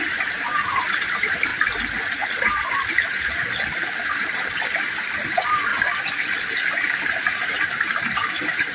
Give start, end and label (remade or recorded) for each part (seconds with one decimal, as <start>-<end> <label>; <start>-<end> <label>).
0.0-1.5 remade; 1.5-2.0 recorded; 2.0-3.4 remade; 3.4-4.2 recorded; 4.2-5.7 remade; 5.7-7.0 recorded; 7.0-8.7 remade

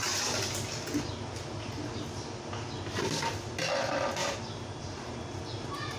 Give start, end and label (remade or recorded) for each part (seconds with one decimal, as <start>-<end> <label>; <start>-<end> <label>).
0.0-4.2 recorded; 4.2-5.1 remade; 5.1-6.0 recorded

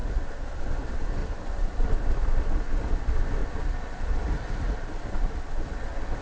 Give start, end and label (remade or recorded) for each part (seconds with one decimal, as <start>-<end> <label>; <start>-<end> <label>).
0.0-0.6 remade; 0.6-1.2 recorded; 1.2-1.9 remade; 1.9-3.4 recorded; 3.4-5.3 remade; 5.3-6.2 recorded